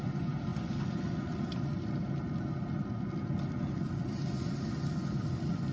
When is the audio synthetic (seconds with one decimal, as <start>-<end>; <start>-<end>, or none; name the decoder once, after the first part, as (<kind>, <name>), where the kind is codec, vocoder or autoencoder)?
none